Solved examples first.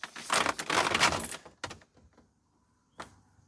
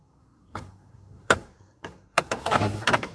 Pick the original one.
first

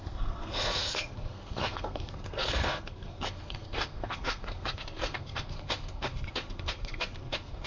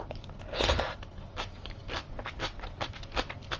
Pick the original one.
second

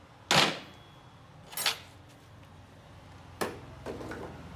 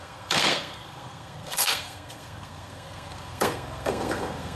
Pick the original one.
first